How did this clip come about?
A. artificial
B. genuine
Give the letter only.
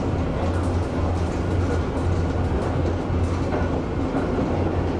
B